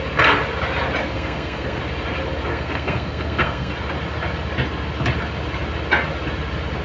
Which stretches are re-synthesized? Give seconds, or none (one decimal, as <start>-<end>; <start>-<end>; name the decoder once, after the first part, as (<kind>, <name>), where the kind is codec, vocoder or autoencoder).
1.0-1.8 (codec, SNAC); 2.5-3.7